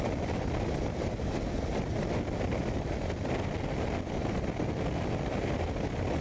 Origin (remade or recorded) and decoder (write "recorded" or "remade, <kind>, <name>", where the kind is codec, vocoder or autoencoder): recorded